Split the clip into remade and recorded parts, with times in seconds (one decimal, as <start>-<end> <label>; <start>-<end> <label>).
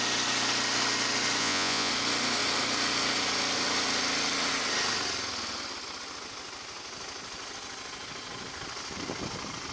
0.0-1.4 recorded; 1.4-1.9 remade; 1.9-9.7 recorded